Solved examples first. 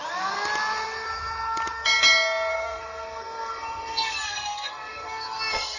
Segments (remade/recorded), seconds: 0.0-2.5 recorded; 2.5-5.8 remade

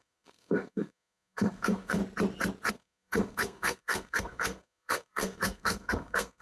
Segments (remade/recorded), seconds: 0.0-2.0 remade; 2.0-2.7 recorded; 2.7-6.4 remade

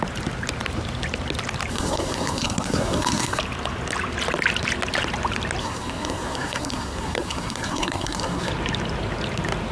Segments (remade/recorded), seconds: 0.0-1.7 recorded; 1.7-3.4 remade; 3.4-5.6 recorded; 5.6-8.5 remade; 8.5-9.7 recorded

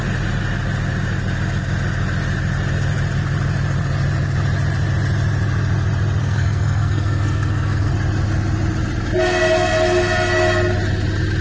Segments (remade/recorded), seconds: 0.0-6.2 recorded; 6.2-7.9 remade; 7.9-11.4 recorded

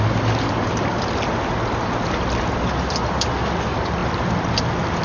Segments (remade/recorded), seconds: 0.0-5.0 recorded

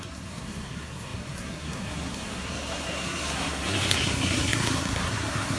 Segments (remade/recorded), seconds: 0.0-5.6 remade

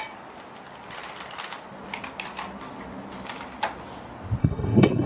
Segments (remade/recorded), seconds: 0.0-4.4 recorded; 4.4-5.1 remade